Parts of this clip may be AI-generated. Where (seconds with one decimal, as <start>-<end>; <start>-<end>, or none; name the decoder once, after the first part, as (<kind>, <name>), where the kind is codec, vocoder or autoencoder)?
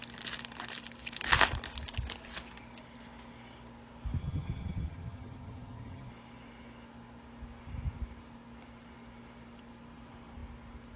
4.2-6.1 (vocoder, HiFi-GAN)